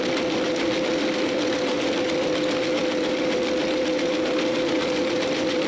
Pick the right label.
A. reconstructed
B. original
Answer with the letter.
B